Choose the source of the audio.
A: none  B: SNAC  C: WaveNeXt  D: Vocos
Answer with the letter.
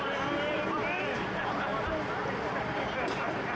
A